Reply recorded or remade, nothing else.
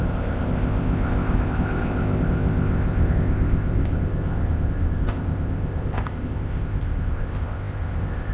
remade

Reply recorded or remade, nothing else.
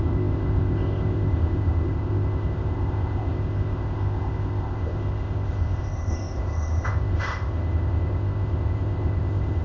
remade